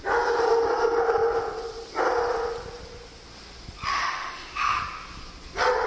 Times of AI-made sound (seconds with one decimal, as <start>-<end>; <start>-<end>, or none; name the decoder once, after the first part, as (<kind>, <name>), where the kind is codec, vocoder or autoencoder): 3.9-4.8 (autoencoder, DAC-VAE)